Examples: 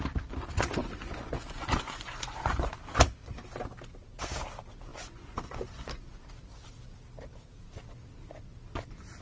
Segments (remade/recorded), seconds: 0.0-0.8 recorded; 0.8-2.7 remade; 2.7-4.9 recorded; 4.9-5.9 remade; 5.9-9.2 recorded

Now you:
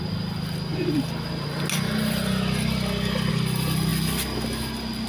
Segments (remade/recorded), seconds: 0.0-5.1 recorded

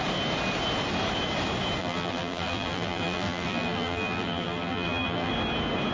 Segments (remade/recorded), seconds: 0.0-1.8 recorded; 1.8-5.3 remade; 5.3-5.9 recorded

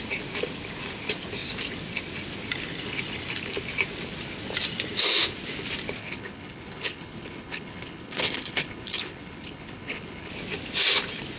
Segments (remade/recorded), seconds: 0.0-6.0 recorded; 6.0-10.3 remade; 10.3-11.4 recorded

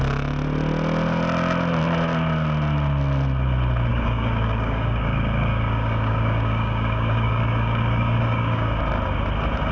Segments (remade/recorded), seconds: 0.0-3.9 recorded; 3.9-8.8 remade; 8.8-9.7 recorded

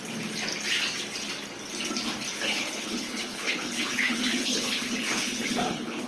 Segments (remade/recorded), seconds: 0.0-2.3 recorded; 2.3-6.1 remade

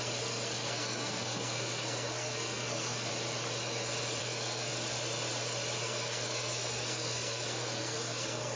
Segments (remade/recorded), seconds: 0.0-3.1 remade; 3.1-4.2 recorded; 4.2-4.7 remade; 4.7-5.8 recorded; 5.8-8.6 remade

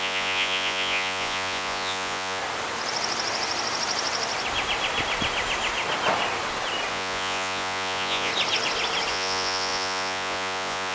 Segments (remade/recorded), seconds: 0.0-2.4 remade; 2.4-6.9 recorded; 6.9-8.3 remade; 8.3-9.1 recorded; 9.1-10.9 remade